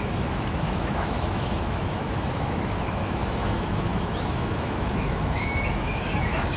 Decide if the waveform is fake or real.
fake